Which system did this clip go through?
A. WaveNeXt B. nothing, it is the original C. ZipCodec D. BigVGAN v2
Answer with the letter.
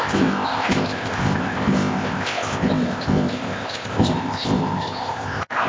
C